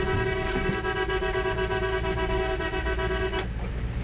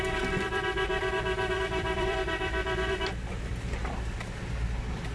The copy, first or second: second